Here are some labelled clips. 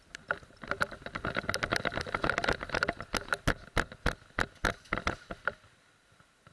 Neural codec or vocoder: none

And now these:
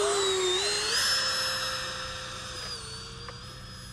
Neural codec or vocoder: none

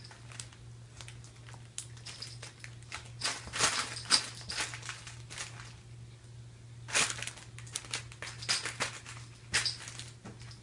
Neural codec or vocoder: none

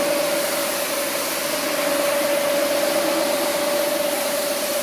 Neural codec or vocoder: none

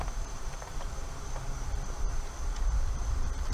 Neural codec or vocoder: vocoder, BigVGAN v2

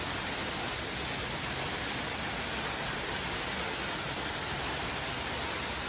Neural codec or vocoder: none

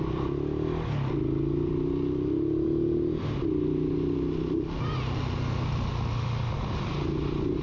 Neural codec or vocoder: none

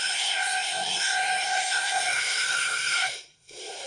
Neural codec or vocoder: codec, SNAC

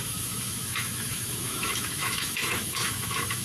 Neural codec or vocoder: autoencoder, DAC-VAE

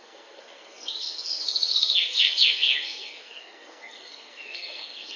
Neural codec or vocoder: codec, SNAC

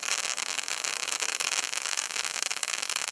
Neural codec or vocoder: codec, DAC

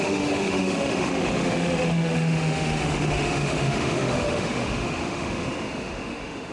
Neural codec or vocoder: autoencoder, DAC-VAE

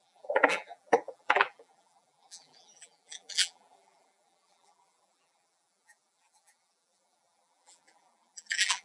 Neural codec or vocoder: vocoder, BigVGAN v2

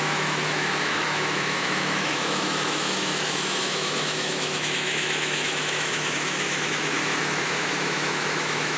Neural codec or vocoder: autoencoder, DAC-VAE